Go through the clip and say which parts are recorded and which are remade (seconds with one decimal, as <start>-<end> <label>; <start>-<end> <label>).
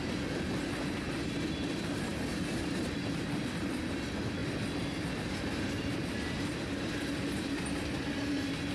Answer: 0.0-8.7 recorded